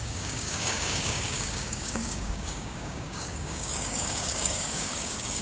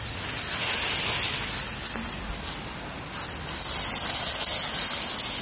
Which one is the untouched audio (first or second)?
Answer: second